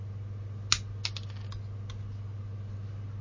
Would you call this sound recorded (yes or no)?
yes